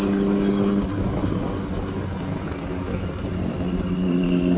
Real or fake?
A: real